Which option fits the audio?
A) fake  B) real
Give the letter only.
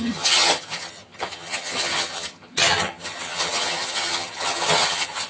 A